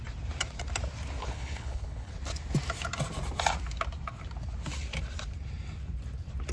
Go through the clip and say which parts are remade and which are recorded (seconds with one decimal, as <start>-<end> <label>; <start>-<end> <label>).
0.0-1.2 recorded; 1.2-2.1 remade; 2.1-6.5 recorded